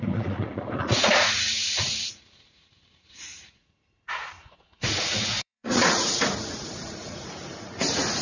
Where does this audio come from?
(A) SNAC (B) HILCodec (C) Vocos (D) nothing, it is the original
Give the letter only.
C